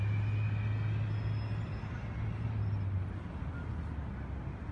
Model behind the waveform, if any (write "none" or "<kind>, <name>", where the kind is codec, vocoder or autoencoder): none